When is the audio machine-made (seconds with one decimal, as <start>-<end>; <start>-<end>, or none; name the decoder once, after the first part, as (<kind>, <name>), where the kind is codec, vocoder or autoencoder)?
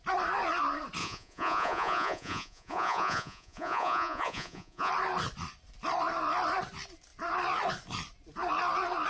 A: 1.0-4.9 (vocoder, Vocos)